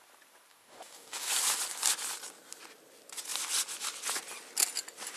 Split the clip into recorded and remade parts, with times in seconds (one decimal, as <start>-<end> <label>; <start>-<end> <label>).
0.0-0.5 recorded; 0.5-1.3 remade; 1.3-5.2 recorded